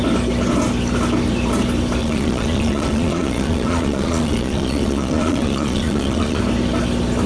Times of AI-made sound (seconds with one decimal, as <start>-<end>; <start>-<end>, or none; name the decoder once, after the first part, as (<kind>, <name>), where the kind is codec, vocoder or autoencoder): 2.0-6.4 (vocoder, Vocos)